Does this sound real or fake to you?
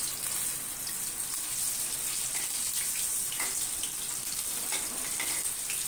real